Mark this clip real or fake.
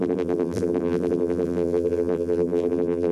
fake